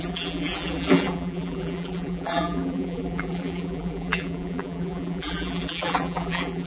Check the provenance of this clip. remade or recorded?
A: remade